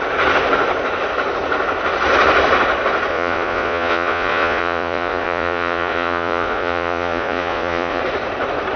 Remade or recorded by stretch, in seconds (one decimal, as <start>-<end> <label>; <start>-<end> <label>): 0.0-3.1 recorded; 3.1-8.0 remade; 8.0-8.8 recorded